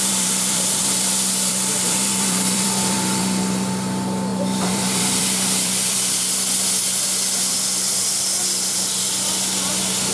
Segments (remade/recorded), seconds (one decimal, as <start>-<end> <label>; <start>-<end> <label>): 0.0-3.2 remade; 3.2-4.3 recorded; 4.3-6.3 remade; 6.3-10.1 recorded